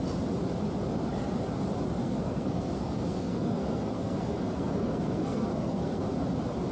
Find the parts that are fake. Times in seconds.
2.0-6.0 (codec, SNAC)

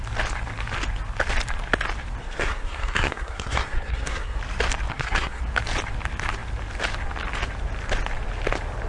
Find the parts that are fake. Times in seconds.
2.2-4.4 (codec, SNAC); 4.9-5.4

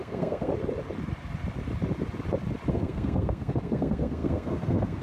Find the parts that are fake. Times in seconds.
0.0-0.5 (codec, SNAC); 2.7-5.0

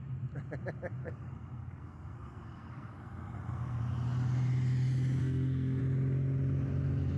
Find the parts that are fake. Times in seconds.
1.0-3.8 (codec, SNAC); 5.2-5.8

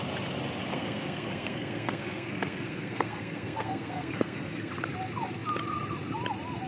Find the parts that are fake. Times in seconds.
0.7-4.7 (codec, SNAC)

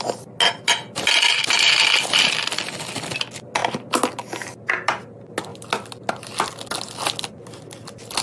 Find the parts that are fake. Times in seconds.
none

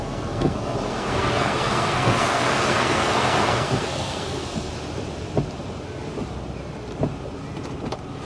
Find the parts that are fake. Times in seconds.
0.0-4.7 (codec, SNAC)

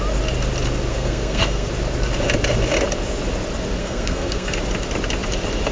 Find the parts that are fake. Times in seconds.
0.9-1.7 (codec, SNAC); 3.8-4.6